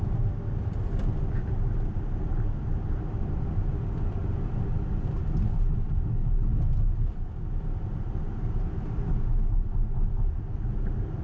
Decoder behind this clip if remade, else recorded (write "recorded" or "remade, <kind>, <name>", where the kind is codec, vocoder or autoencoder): recorded